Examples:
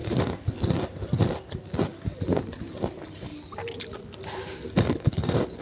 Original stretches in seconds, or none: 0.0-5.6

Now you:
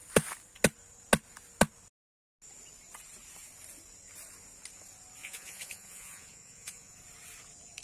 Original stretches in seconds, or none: 0.0-5.2; 7.0-7.8

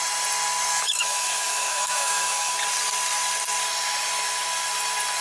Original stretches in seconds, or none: 0.0-0.7; 2.5-5.2